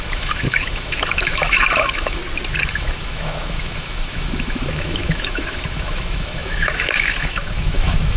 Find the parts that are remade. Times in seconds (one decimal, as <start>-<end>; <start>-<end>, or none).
0.0-2.2; 2.7-8.2